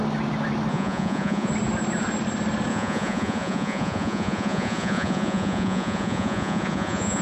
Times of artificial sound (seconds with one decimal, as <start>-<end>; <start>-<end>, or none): 0.7-1.5; 2.7-7.2